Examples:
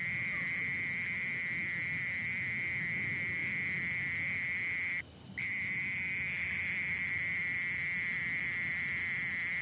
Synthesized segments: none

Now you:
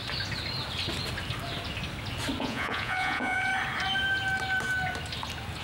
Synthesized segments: 2.4-3.5 (vocoder, Vocos)

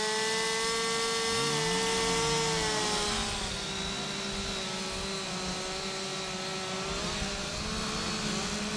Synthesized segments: none

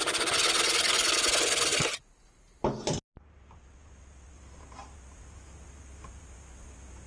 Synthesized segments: none

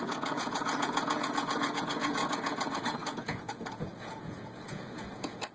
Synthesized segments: 0.0-5.5 (vocoder, Vocos)